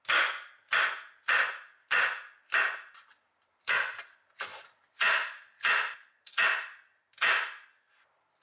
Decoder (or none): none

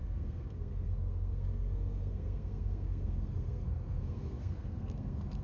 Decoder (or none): codec, SNAC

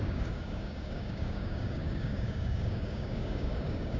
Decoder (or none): codec, DAC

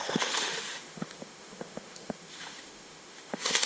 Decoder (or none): autoencoder, DAC-VAE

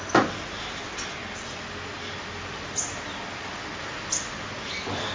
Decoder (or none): none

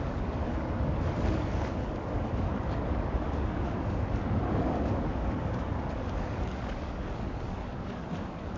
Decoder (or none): codec, DAC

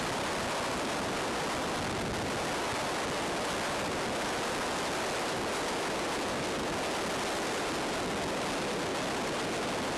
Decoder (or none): none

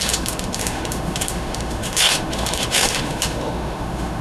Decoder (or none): autoencoder, DAC-VAE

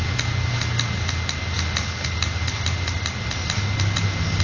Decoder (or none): none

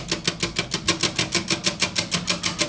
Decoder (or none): none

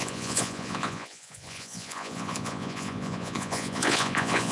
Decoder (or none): vocoder, Vocos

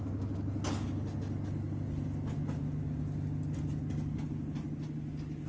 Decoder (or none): none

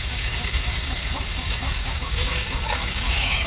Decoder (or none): codec, DAC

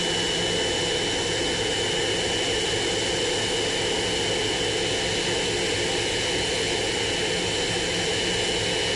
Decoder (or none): none